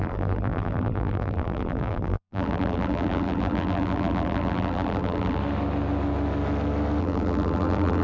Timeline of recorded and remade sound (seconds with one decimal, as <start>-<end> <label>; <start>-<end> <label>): 0.0-5.4 remade; 5.4-7.0 recorded; 7.0-8.0 remade